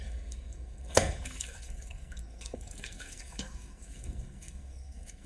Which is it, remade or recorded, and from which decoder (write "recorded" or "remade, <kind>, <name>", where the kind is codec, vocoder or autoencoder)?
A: remade, codec, SNAC